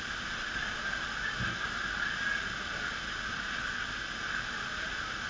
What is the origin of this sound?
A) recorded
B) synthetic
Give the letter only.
A